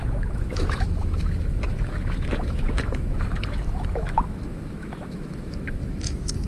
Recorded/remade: remade